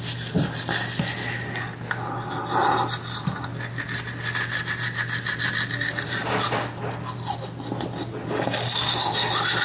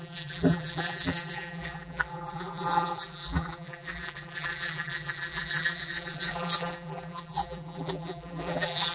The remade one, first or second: second